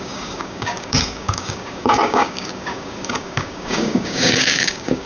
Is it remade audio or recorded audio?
remade